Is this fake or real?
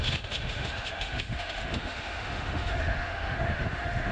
fake